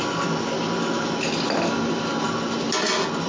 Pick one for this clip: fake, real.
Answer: real